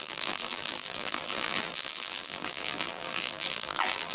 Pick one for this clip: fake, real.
fake